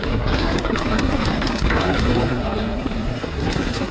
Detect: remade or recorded remade